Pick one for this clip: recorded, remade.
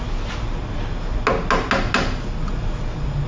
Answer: recorded